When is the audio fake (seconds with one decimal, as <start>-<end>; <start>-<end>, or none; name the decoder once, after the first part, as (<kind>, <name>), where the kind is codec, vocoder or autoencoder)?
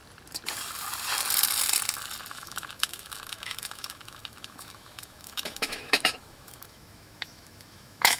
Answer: 2.3-8.2 (autoencoder, DAC-VAE)